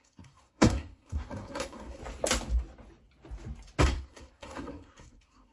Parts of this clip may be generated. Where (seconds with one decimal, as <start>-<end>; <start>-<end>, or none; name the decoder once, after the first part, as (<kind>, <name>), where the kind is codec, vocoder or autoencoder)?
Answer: 0.0-2.0 (codec, SNAC); 3.8-5.5